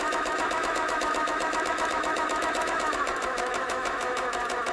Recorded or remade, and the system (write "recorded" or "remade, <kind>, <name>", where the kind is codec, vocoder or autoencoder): remade, autoencoder, DAC-VAE